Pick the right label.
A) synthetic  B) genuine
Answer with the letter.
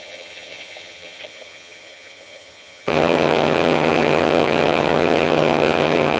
A